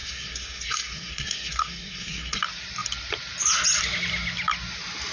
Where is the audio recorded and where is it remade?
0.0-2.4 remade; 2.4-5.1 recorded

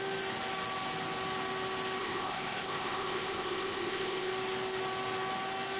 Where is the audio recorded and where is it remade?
0.0-2.0 recorded; 2.0-4.3 remade; 4.3-5.8 recorded

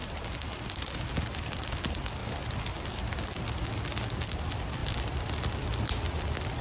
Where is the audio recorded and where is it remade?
0.0-6.6 recorded

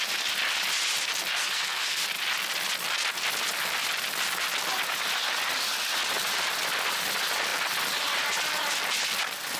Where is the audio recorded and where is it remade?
0.0-1.4 recorded; 1.4-2.0 remade; 2.0-9.6 recorded

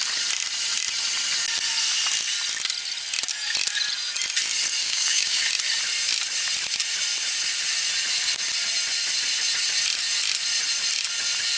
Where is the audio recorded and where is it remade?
0.0-4.8 recorded; 4.8-5.4 remade; 5.4-11.6 recorded

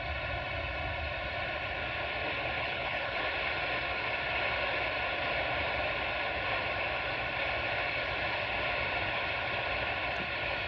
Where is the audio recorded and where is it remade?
0.0-2.6 recorded; 2.6-3.2 remade; 3.2-10.7 recorded